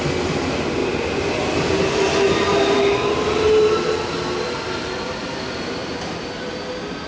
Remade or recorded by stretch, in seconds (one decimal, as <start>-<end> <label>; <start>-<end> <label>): 0.0-5.8 recorded; 5.8-6.5 remade; 6.5-7.1 recorded